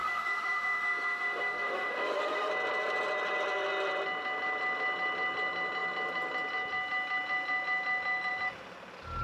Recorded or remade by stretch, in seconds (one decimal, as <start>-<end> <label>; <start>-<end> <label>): 0.0-2.5 remade; 2.5-9.2 recorded